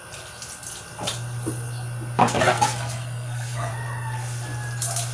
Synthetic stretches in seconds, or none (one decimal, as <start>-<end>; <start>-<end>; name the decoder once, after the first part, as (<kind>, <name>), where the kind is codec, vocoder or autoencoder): 2.2-3.7 (codec, SNAC)